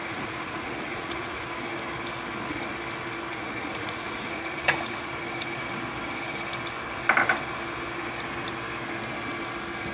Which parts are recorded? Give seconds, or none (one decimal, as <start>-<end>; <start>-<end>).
1.5-3.3; 5.1-9.9